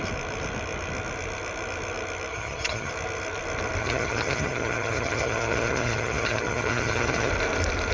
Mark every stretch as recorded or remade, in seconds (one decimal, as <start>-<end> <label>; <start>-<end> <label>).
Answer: 0.0-2.3 recorded; 2.3-2.9 remade; 2.9-3.8 recorded; 3.8-7.3 remade; 7.3-7.9 recorded